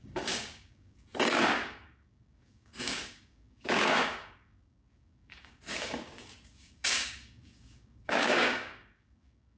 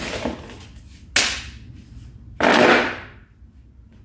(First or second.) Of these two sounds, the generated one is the first